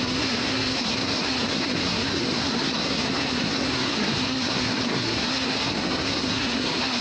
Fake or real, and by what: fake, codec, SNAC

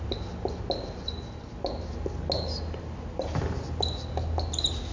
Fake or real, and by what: real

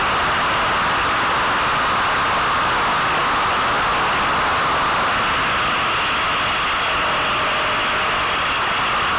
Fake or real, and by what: real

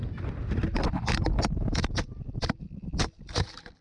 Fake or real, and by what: real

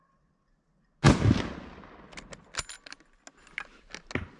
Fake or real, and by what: real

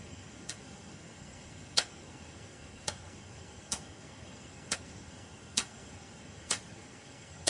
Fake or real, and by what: fake, codec, SNAC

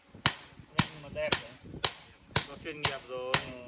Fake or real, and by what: real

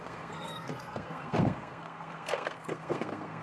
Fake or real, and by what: fake, codec, SNAC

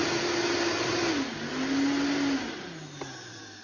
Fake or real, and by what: real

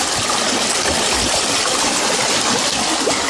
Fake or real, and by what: real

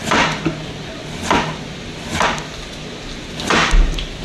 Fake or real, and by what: real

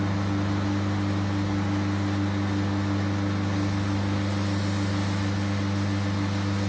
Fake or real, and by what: real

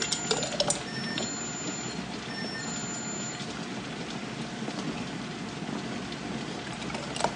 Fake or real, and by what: real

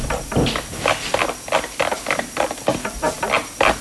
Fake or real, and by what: real